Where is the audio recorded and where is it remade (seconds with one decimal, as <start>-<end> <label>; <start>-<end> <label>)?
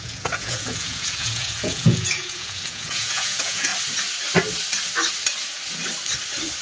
0.0-3.7 remade; 3.7-6.6 recorded